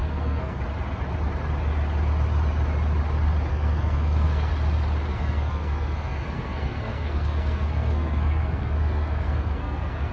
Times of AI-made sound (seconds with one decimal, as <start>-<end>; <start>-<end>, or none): 0.0-0.6; 3.5-4.5; 5.1-10.1